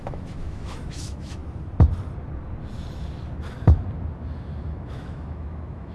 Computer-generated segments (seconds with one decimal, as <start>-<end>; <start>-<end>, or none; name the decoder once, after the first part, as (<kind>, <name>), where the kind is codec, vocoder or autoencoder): 0.0-1.4 (autoencoder, DAC-VAE); 4.6-5.9